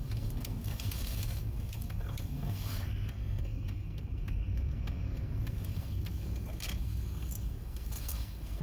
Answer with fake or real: fake